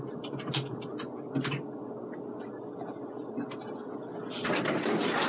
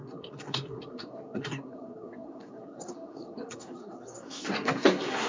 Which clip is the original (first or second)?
first